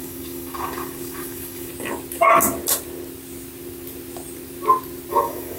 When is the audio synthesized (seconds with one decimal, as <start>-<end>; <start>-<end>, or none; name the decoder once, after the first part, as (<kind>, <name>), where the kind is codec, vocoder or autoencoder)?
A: 0.0-1.7 (codec, DAC); 5.1-5.6